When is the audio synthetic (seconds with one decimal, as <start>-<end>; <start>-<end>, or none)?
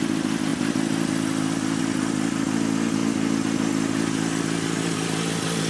none